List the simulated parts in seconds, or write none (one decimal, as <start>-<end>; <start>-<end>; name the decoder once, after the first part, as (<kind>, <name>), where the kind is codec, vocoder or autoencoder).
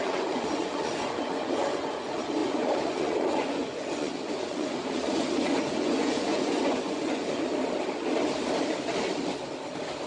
0.0-7.5 (vocoder, Vocos)